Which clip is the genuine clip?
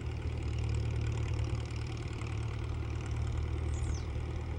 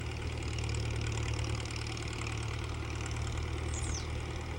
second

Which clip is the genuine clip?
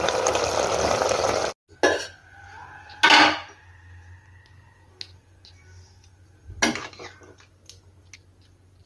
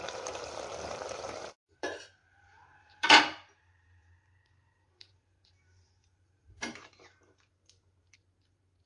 first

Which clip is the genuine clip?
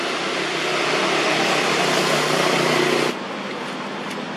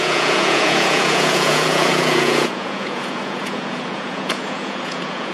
first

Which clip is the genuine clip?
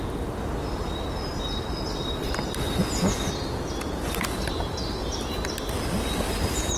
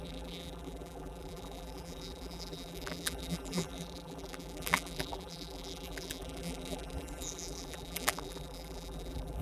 first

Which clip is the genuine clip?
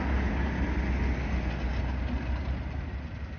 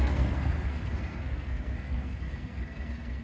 first